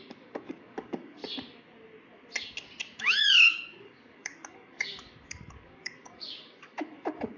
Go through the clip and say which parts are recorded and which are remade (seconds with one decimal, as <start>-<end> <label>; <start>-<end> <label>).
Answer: 0.0-1.2 remade; 1.2-3.0 recorded; 3.0-7.4 remade